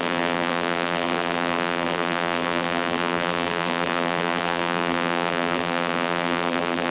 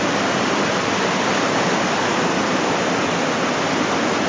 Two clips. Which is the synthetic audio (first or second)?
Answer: first